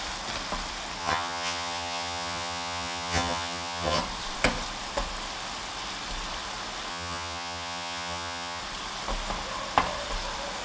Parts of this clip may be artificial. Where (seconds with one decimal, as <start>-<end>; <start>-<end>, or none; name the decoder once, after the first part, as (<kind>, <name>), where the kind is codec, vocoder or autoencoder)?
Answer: 1.0-4.0 (vocoder, HiFi-GAN); 6.9-8.6